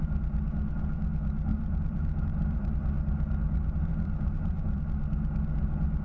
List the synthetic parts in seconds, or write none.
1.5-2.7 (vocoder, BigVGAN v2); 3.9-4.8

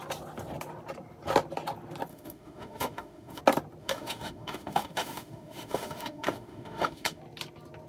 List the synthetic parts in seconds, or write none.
2.1-3.4 (autoencoder, DAC-VAE); 3.8-7.2